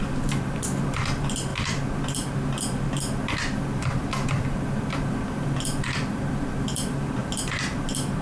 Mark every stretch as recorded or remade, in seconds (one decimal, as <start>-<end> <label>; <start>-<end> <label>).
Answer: 0.0-8.2 remade